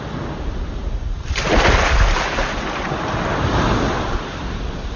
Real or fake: real